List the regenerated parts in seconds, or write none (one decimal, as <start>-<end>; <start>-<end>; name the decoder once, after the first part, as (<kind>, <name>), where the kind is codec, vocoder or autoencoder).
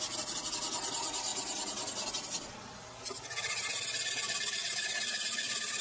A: none